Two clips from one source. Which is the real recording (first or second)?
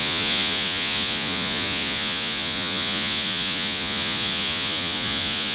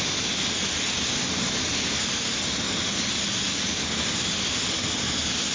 second